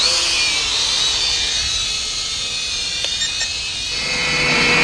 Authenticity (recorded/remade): recorded